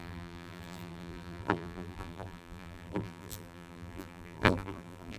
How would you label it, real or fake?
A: fake